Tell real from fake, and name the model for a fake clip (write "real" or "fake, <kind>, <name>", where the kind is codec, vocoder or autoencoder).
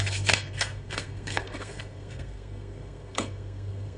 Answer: fake, codec, SNAC